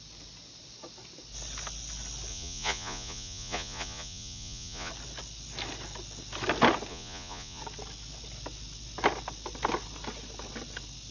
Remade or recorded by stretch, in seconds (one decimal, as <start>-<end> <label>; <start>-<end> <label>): 0.0-2.3 recorded; 2.3-4.9 remade; 4.9-6.9 recorded; 6.9-7.6 remade; 7.6-11.1 recorded